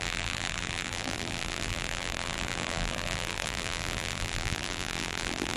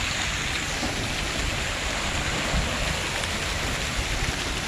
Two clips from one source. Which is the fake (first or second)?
first